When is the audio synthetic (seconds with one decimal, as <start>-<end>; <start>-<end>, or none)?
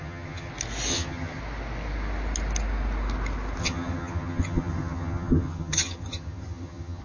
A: 0.0-0.5; 0.9-1.4; 3.6-7.0